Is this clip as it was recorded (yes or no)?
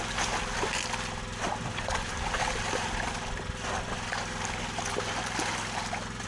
yes